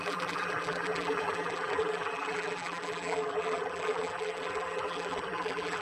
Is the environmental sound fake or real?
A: fake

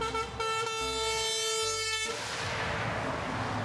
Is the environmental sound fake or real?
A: real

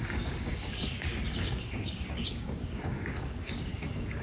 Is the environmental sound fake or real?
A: fake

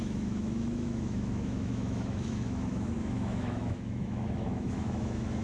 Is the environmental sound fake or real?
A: fake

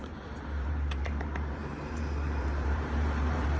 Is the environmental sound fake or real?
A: fake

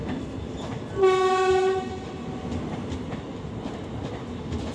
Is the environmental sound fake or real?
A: real